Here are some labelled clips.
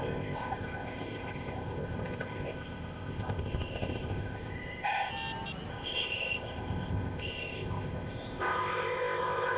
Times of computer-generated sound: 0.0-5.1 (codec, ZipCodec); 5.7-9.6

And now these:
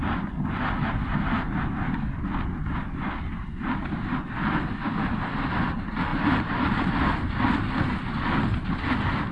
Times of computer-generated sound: 6.1-6.9 (vocoder, BigVGAN v2)

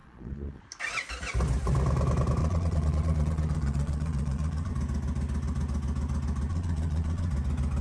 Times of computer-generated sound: 0.0-0.6 (vocoder, Vocos); 2.4-4.7; 6.5-7.3

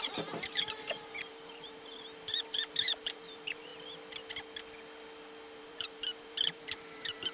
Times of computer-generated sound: 0.0-3.7 (vocoder, BigVGAN v2); 5.6-7.3